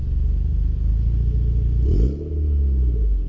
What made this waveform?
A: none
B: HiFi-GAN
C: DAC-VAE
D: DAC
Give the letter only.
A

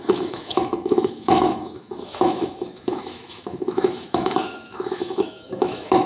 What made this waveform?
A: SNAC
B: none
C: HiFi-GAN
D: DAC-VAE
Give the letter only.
D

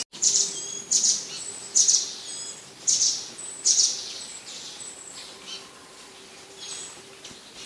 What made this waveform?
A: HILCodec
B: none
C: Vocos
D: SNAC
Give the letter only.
B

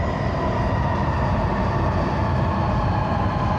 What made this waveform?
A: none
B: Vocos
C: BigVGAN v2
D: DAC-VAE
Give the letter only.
A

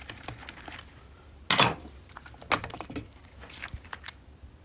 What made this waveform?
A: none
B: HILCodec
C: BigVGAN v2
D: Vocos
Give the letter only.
A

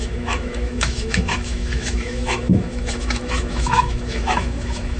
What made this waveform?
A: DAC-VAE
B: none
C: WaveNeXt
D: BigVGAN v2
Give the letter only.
A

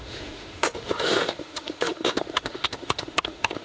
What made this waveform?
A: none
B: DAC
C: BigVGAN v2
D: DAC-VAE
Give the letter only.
D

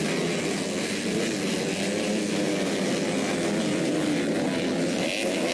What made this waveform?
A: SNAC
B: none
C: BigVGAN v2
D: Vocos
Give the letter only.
B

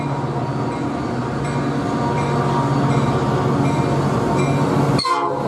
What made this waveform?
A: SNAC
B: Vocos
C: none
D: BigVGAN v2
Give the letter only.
C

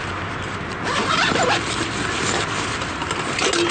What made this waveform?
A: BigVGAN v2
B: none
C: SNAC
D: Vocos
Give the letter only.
B